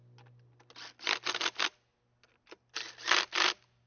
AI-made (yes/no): no